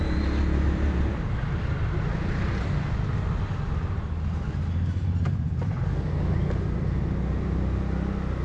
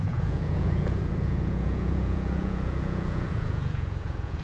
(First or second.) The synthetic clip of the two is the second